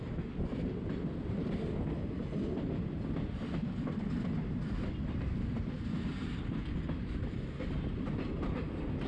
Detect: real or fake real